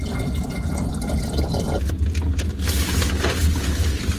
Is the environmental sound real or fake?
real